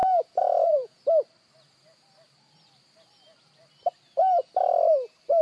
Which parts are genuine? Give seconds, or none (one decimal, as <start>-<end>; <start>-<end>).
1.0-5.4